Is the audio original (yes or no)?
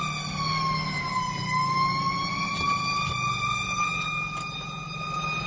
yes